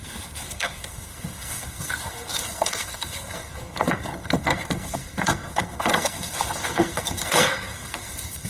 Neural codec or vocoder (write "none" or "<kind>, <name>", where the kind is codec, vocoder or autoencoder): codec, SNAC